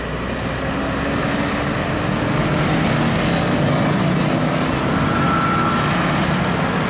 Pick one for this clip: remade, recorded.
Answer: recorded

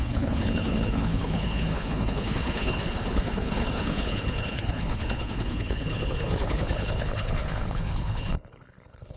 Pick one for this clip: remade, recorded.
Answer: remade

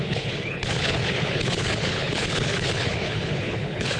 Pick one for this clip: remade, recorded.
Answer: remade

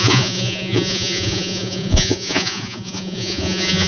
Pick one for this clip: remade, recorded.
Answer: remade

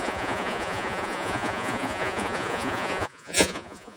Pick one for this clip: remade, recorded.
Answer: remade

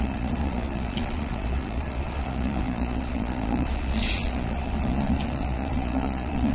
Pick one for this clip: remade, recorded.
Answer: remade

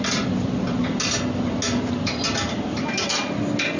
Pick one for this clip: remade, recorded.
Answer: recorded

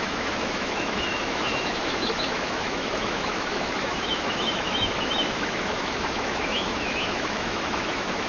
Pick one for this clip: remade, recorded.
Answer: remade